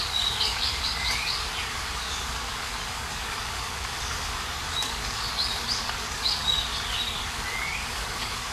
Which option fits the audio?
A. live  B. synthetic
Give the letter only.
B